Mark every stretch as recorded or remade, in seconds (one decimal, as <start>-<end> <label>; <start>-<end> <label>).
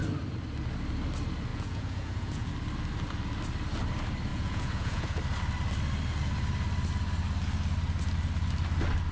0.0-1.5 recorded; 1.5-2.5 remade; 2.5-4.3 recorded; 4.3-5.2 remade; 5.2-9.1 recorded